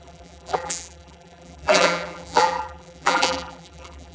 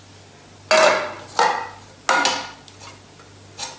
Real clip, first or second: second